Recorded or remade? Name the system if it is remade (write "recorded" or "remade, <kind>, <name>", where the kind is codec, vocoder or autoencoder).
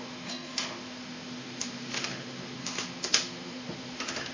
remade, autoencoder, DAC-VAE